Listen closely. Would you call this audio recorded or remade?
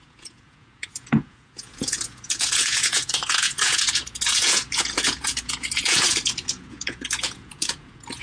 remade